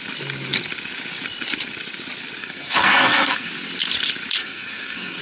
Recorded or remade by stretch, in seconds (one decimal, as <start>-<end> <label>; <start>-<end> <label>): 0.0-2.4 recorded; 2.4-3.5 remade; 3.5-4.4 recorded; 4.4-5.2 remade